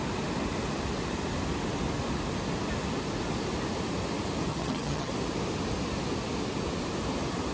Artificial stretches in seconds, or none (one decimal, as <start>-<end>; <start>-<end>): 4.5-5.1